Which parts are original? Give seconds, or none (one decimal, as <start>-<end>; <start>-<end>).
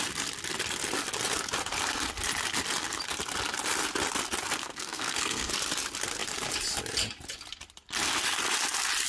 0.0-4.6; 5.5-9.1